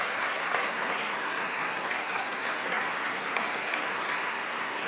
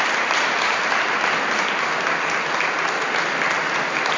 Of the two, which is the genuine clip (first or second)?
second